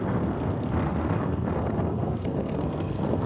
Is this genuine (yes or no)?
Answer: no